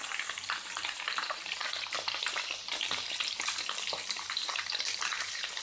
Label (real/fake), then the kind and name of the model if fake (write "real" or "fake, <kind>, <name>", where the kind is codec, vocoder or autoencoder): fake, vocoder, BigVGAN v2